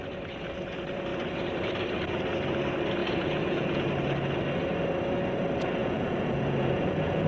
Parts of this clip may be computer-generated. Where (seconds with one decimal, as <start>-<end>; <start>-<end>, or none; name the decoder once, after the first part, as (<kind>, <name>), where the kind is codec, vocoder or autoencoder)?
3.0-3.9 (vocoder, Vocos); 5.8-7.3